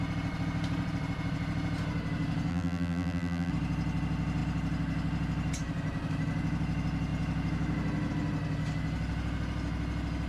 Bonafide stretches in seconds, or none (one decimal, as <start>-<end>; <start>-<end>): 0.0-2.5; 3.5-10.3